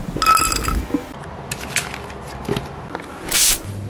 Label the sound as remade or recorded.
recorded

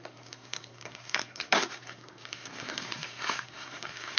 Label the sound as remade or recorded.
remade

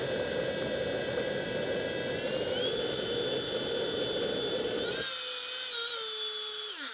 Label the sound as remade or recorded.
recorded